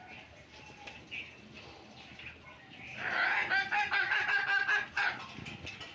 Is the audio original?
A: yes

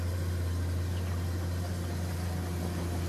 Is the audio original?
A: yes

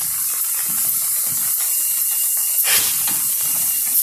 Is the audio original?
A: yes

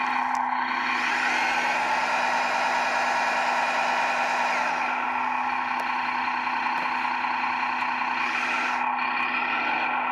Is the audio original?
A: yes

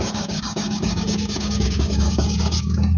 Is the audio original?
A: no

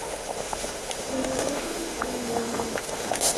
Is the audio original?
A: no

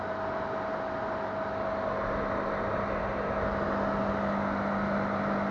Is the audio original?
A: yes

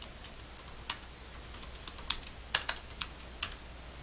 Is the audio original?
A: yes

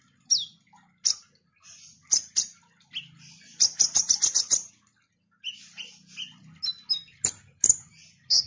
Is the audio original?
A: yes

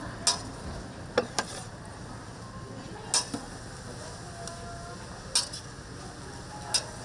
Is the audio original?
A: yes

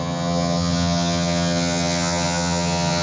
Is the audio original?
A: no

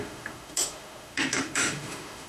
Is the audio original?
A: no